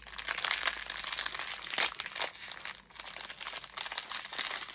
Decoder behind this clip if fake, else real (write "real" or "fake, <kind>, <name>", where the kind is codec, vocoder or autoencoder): real